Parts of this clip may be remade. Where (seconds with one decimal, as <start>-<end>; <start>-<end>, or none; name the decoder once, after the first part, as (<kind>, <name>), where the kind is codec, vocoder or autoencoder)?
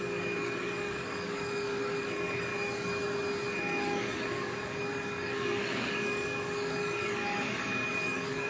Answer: 0.0-2.5 (codec, DAC); 3.6-8.5